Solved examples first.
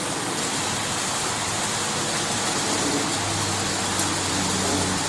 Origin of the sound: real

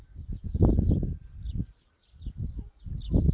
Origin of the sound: real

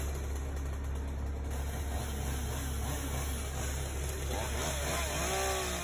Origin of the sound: real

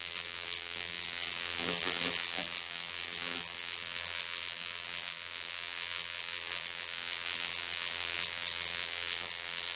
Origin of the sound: fake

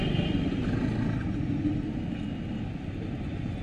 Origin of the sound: real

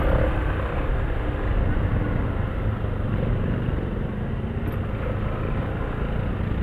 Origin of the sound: real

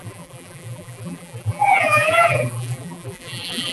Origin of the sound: fake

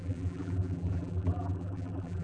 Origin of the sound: fake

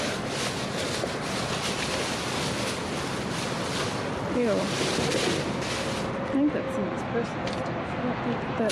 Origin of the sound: real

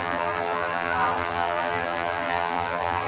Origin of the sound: fake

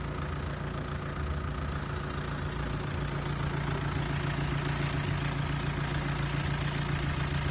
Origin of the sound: real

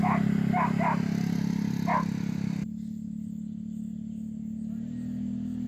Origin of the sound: real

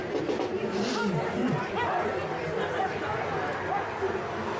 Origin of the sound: real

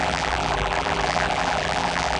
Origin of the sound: fake